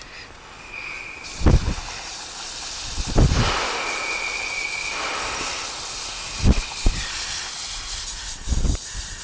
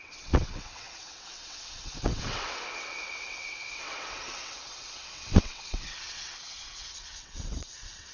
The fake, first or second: second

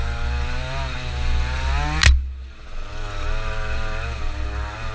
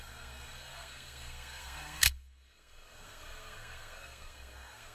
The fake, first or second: second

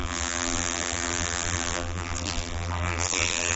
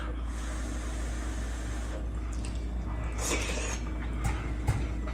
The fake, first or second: first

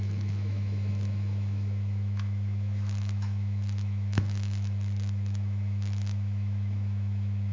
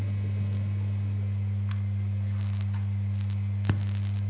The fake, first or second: first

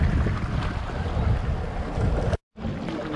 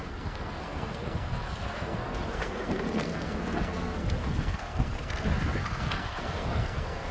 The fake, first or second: second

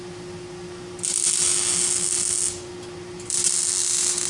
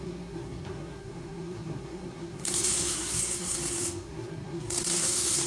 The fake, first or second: second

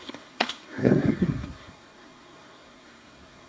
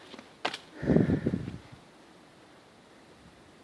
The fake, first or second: first